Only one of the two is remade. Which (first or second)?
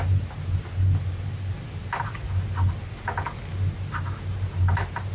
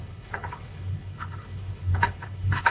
second